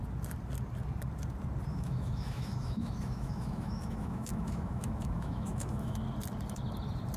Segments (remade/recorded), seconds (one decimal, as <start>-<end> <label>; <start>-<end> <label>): 0.0-1.7 recorded; 1.7-6.0 remade; 6.0-7.2 recorded